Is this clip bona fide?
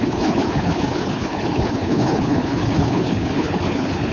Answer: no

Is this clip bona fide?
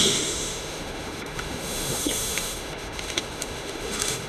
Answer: no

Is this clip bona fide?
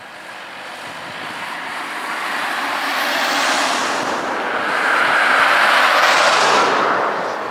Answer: yes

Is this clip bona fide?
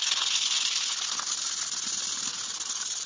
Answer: yes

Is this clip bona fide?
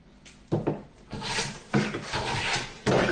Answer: yes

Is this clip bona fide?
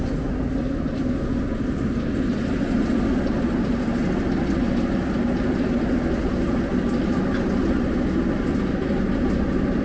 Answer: yes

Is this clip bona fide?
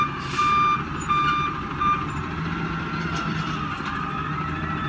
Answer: yes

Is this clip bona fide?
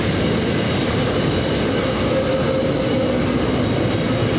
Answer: yes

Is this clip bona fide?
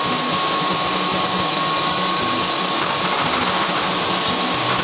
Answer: yes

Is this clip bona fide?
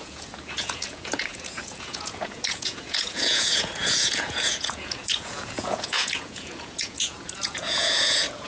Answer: no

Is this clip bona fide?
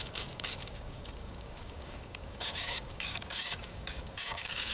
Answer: no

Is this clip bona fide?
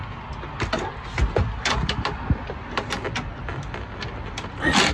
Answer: yes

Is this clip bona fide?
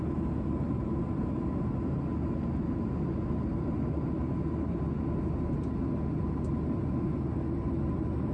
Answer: yes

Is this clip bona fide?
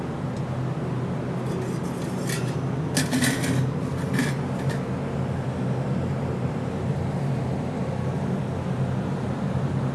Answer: yes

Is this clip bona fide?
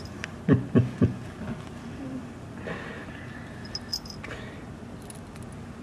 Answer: yes